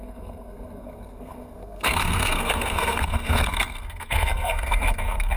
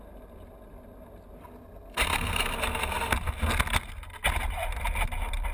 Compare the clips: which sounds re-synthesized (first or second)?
first